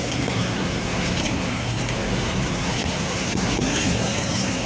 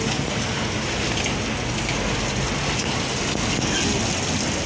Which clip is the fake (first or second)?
first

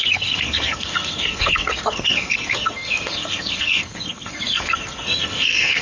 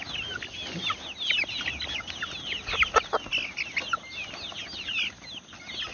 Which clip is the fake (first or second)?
first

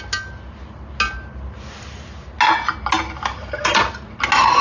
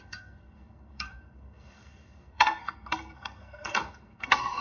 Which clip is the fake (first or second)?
second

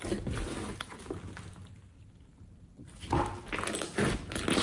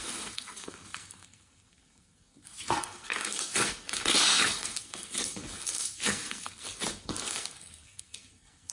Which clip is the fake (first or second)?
second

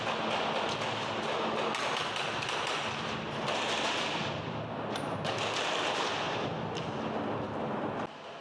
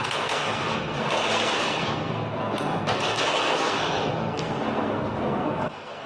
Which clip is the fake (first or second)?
second